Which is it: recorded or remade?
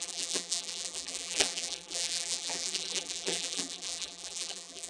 remade